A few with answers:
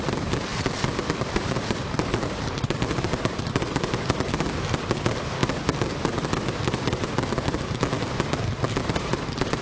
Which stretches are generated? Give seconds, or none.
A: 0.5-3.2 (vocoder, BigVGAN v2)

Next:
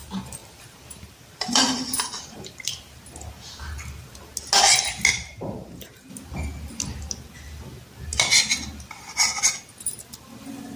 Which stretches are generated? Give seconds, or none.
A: 0.4-2.8 (vocoder, BigVGAN v2); 5.1-6.1

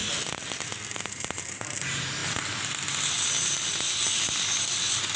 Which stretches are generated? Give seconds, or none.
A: 0.9-2.2 (vocoder, BigVGAN v2)

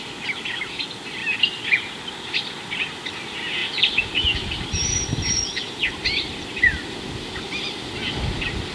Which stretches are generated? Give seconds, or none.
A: 1.2-2.6 (vocoder, BigVGAN v2); 3.6-5.4

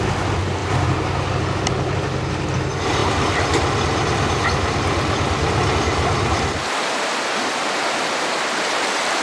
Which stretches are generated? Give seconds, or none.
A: 0.6-1.6 (vocoder, BigVGAN v2)

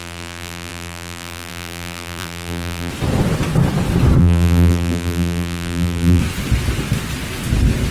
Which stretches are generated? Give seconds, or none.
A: 0.0-2.9 (vocoder, BigVGAN v2); 4.2-6.2

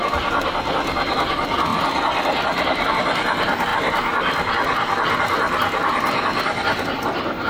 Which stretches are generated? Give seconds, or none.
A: none